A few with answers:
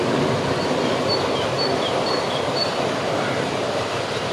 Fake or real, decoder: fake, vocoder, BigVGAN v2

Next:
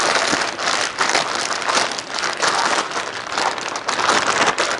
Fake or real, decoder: fake, vocoder, BigVGAN v2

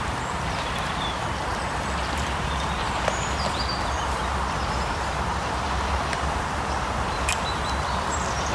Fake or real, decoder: fake, vocoder, BigVGAN v2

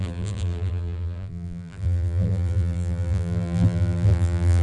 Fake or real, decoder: fake, vocoder, BigVGAN v2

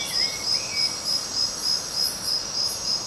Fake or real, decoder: real